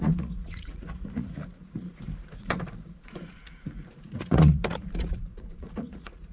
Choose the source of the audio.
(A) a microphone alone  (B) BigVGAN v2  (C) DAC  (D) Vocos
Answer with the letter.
D